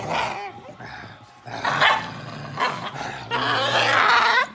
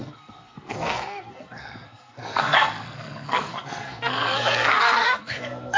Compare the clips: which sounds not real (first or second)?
second